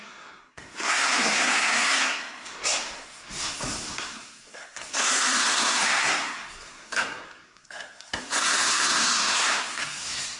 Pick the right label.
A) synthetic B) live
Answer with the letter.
A